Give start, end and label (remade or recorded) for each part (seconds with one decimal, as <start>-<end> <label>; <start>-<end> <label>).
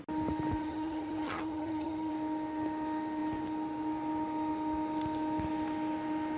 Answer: 0.0-0.6 recorded; 0.6-2.1 remade; 2.1-6.4 recorded